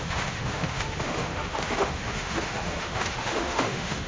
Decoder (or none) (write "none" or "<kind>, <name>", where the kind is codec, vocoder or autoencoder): autoencoder, DAC-VAE